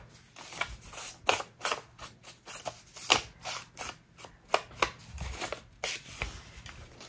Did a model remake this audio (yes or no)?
no